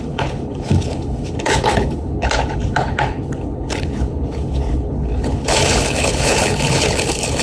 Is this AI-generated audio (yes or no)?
yes